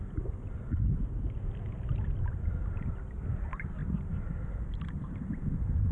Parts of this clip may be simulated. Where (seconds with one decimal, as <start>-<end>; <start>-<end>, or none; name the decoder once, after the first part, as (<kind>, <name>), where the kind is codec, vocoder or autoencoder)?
none

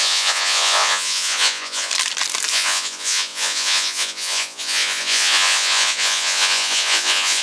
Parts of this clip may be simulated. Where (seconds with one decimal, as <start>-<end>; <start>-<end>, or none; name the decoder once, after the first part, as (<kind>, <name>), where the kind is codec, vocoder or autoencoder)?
0.0-1.9 (vocoder, Vocos); 2.5-7.4

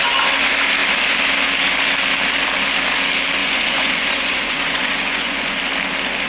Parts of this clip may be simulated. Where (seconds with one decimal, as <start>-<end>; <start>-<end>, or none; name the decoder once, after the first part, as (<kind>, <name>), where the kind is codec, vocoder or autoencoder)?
3.4-5.6 (vocoder, Vocos)

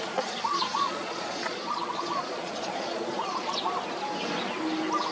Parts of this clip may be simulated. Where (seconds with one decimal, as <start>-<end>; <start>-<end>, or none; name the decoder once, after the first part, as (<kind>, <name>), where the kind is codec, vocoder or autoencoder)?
0.5-3.6 (vocoder, Vocos)